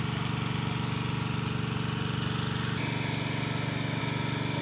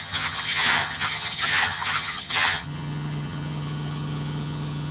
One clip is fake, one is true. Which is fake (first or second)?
second